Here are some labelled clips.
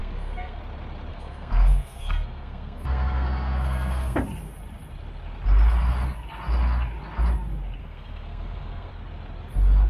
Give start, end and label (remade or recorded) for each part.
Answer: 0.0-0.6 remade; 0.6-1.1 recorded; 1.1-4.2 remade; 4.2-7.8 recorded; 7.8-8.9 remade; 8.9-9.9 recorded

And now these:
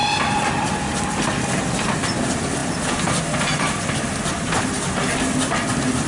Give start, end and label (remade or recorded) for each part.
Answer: 0.0-6.1 recorded

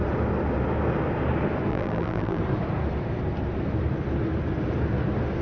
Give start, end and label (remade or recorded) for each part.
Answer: 0.0-1.7 recorded; 1.7-2.4 remade; 2.4-5.4 recorded

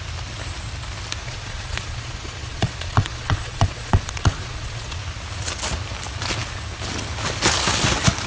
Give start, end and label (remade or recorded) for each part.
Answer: 0.0-1.2 recorded; 1.2-5.0 remade; 5.0-8.3 recorded

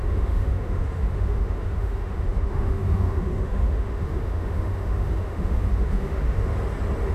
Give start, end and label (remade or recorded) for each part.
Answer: 0.0-6.5 remade; 6.5-7.1 recorded

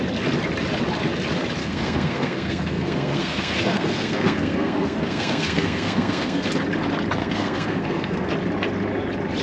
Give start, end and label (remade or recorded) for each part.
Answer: 0.0-1.6 recorded; 1.6-6.5 remade; 6.5-7.2 recorded; 7.2-8.3 remade; 8.3-9.4 recorded

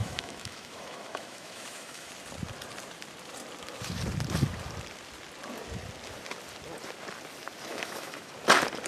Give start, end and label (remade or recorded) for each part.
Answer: 0.0-2.1 remade; 2.1-7.7 recorded; 7.7-8.3 remade; 8.3-8.9 recorded